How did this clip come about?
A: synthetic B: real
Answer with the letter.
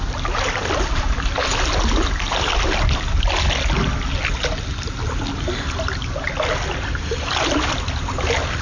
B